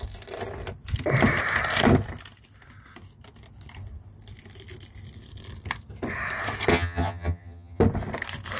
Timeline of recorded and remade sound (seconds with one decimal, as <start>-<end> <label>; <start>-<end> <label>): 0.0-6.7 recorded; 6.7-7.8 remade; 7.8-8.6 recorded